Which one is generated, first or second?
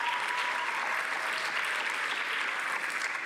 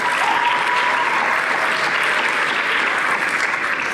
first